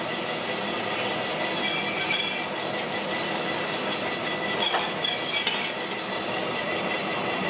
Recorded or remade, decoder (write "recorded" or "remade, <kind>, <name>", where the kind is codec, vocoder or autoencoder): recorded